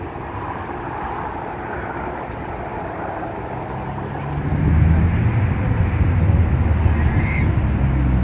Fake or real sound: real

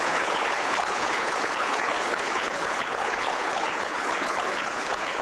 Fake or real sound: fake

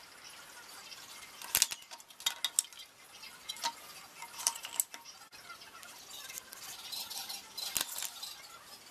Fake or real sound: real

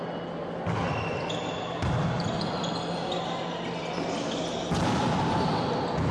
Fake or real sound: real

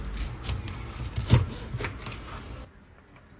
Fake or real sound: real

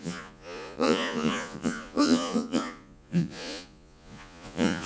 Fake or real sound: fake